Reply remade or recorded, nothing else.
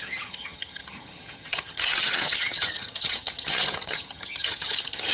remade